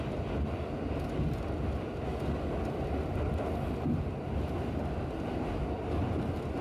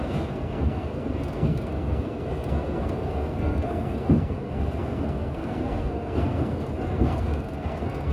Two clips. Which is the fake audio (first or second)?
second